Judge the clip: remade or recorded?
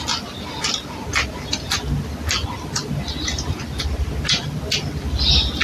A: recorded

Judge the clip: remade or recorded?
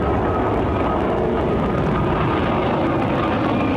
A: recorded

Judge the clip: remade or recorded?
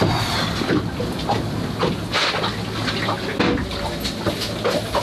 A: recorded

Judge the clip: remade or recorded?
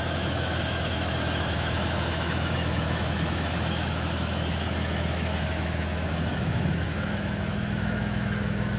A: remade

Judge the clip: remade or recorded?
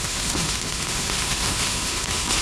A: remade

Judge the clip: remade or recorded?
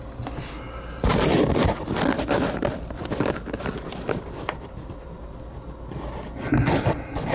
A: recorded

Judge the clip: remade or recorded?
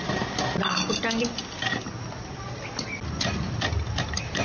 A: recorded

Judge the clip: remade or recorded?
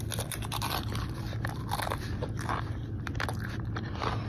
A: recorded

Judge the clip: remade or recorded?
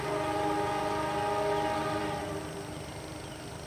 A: recorded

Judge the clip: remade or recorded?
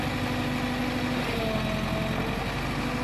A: recorded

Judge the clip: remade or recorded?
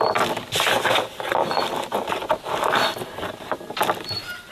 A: recorded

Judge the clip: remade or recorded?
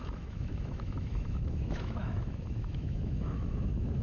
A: remade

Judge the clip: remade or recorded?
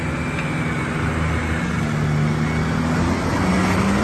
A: recorded